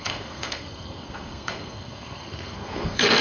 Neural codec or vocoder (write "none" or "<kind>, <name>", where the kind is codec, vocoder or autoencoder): codec, SNAC